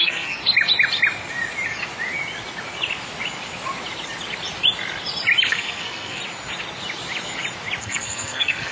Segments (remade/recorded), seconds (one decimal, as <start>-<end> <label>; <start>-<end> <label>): 0.0-0.4 remade; 0.4-5.5 recorded; 5.5-6.2 remade; 6.2-7.8 recorded; 7.8-8.7 remade